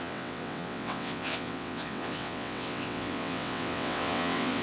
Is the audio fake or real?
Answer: fake